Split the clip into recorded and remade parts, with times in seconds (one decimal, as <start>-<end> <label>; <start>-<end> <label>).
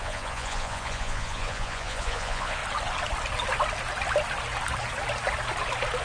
0.0-2.6 remade; 2.6-6.0 recorded